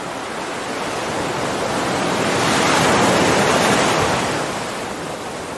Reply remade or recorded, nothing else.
recorded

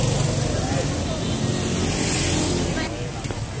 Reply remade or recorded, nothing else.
recorded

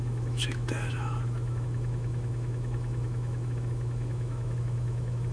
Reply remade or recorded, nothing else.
remade